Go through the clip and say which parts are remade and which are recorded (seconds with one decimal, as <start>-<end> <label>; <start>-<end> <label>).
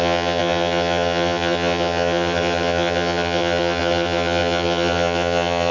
0.0-5.7 remade